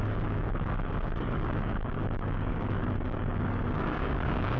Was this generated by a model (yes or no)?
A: yes